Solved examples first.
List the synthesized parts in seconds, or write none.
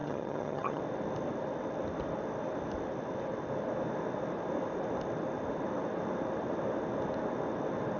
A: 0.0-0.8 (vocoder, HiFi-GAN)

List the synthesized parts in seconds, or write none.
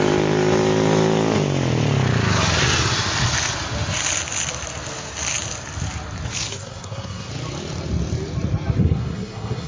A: 6.5-7.3 (codec, SNAC); 8.8-9.7